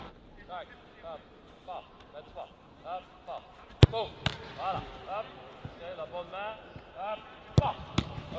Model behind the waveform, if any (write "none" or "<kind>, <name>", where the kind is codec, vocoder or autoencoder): none